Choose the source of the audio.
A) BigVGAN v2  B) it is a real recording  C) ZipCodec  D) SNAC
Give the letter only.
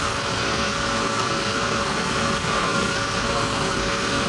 D